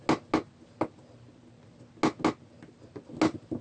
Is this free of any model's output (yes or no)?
yes